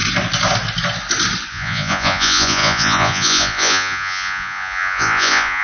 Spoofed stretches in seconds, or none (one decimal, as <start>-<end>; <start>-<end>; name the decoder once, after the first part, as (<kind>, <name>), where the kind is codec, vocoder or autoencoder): 1.5-5.6 (vocoder, Vocos)